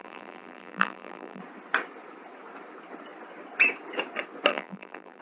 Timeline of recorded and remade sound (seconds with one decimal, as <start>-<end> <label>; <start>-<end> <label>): 0.0-1.4 remade; 1.4-4.5 recorded; 4.5-5.2 remade